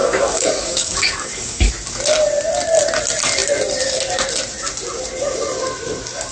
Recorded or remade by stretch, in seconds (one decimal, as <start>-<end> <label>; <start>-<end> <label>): 0.0-1.7 remade; 1.7-6.3 recorded